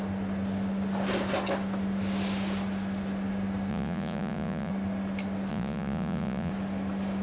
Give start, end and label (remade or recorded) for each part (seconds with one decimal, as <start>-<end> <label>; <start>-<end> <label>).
0.0-3.7 recorded; 3.7-4.7 remade; 4.7-5.5 recorded; 5.5-6.5 remade; 6.5-7.2 recorded